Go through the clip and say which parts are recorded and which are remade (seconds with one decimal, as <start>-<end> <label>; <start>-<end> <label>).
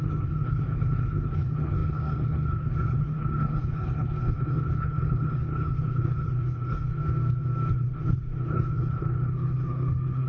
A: 0.0-7.0 remade; 7.0-7.7 recorded; 7.7-10.3 remade